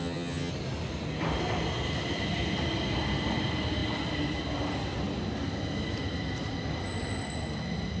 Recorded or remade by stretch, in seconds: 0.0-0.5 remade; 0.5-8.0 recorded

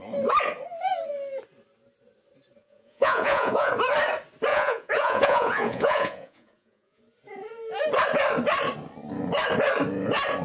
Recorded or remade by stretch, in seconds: 0.0-2.6 recorded; 2.6-3.7 remade; 3.7-4.5 recorded; 4.5-7.0 remade; 7.0-10.4 recorded

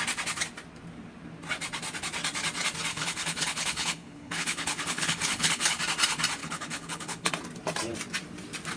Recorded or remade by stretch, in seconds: 0.0-2.9 recorded; 2.9-5.8 remade; 5.8-6.4 recorded; 6.4-7.3 remade; 7.3-8.8 recorded

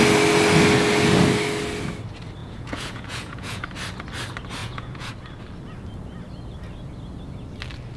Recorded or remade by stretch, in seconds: 0.0-2.4 recorded; 2.4-3.6 remade; 3.6-4.6 recorded; 4.6-5.1 remade; 5.1-8.0 recorded

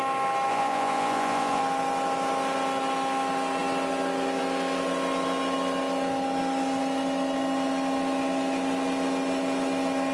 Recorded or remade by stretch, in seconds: 0.0-0.5 recorded; 0.5-1.6 remade; 1.6-10.1 recorded

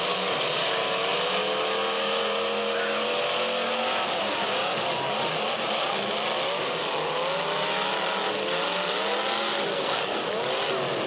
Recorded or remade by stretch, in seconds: 0.0-9.7 recorded; 9.7-10.3 remade; 10.3-11.1 recorded

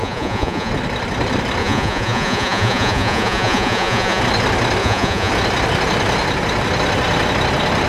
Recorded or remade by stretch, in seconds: 0.0-0.7 remade; 0.7-1.6 recorded; 1.6-4.2 remade; 4.2-4.8 recorded; 4.8-5.3 remade; 5.3-7.9 recorded

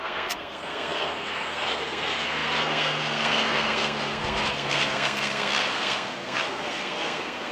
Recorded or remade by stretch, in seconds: 0.0-7.5 remade